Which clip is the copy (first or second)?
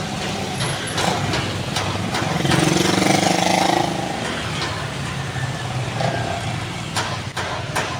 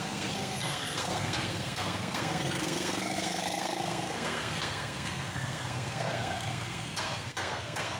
second